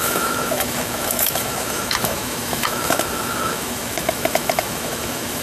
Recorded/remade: remade